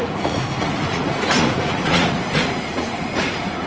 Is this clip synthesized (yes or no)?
yes